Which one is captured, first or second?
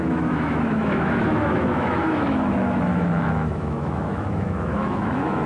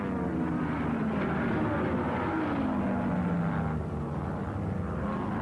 second